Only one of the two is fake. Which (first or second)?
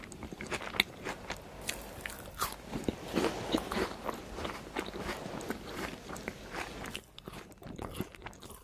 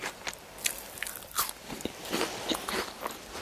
second